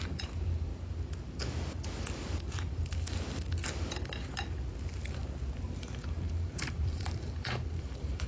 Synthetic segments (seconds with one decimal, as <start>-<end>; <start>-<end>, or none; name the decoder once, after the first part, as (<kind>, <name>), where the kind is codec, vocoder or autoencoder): 0.0-0.7 (vocoder, BigVGAN v2); 5.6-8.3